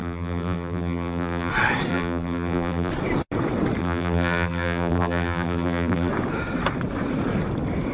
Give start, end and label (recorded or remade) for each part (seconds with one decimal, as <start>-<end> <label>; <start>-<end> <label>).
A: 0.0-1.5 remade; 1.5-1.9 recorded; 1.9-2.9 remade; 2.9-3.8 recorded; 3.8-6.1 remade; 6.1-7.9 recorded